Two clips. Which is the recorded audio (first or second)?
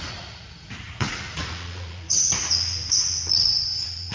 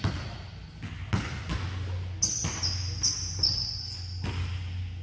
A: second